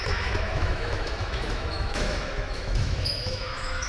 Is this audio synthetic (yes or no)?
yes